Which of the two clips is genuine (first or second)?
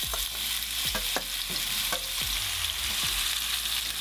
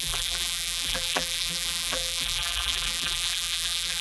first